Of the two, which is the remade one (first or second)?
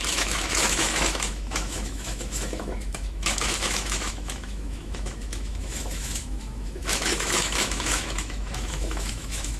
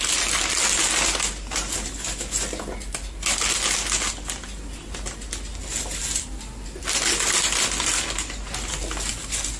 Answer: first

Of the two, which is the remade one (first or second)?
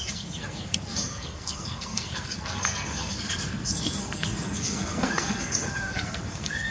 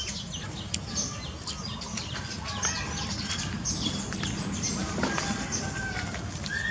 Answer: first